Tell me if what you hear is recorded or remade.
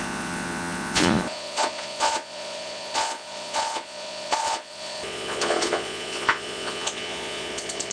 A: remade